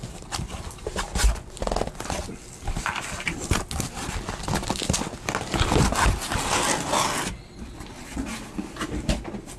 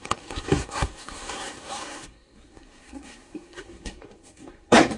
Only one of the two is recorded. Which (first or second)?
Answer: first